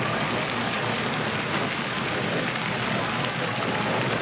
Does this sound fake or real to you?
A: real